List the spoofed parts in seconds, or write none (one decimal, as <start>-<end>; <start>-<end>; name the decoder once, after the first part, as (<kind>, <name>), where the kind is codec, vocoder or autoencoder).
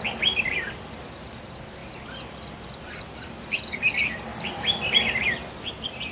1.8-5.1 (vocoder, BigVGAN v2)